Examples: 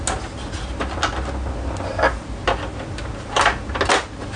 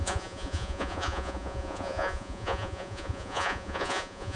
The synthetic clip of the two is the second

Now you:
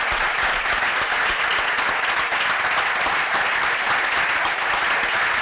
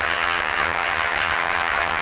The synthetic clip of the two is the second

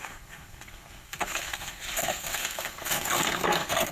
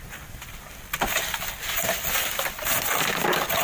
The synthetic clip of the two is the first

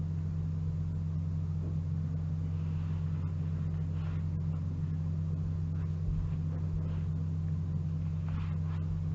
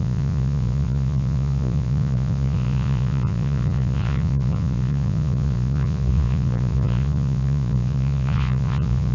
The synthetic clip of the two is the second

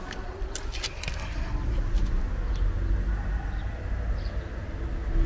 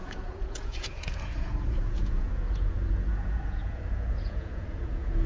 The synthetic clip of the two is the second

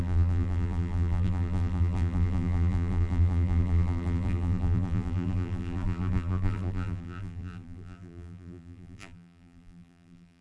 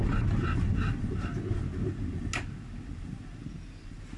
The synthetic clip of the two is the first